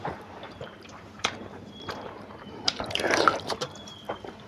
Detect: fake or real fake